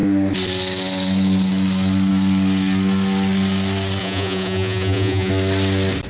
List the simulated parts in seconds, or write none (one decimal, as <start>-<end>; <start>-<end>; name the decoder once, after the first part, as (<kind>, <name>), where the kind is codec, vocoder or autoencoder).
4.0-5.3 (vocoder, Vocos)